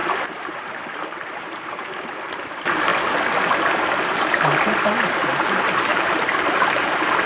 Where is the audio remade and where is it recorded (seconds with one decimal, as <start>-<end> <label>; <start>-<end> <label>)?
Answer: 0.0-1.9 remade; 1.9-5.9 recorded; 5.9-6.4 remade; 6.4-7.3 recorded